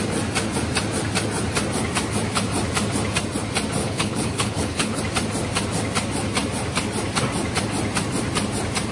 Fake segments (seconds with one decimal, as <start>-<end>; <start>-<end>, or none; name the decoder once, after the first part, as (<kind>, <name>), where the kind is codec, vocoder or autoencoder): 3.8-5.0 (codec, HILCodec)